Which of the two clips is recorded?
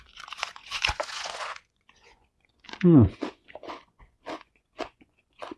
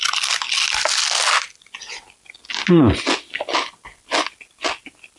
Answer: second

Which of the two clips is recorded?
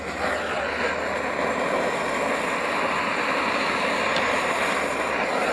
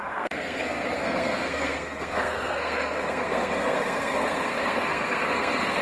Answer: first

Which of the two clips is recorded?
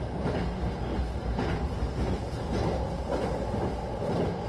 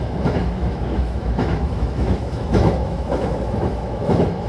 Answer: first